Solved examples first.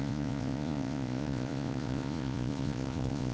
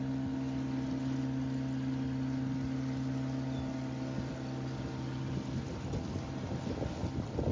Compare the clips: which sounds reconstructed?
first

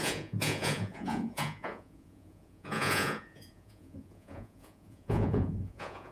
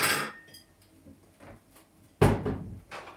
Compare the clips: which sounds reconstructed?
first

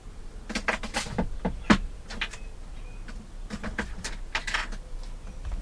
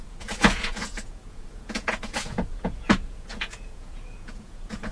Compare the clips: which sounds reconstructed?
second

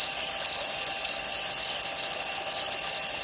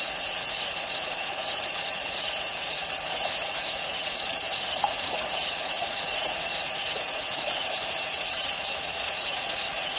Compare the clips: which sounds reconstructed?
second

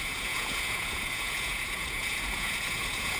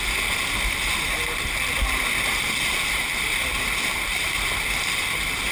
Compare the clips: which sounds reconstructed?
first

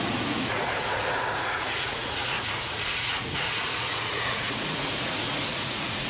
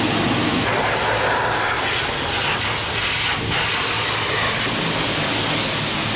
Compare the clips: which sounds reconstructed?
first